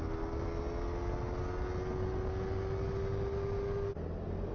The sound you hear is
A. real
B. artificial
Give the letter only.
A